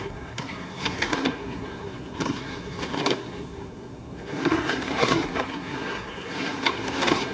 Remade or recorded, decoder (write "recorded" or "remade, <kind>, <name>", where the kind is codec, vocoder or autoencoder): remade, codec, SNAC